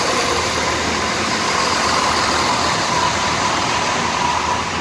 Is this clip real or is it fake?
real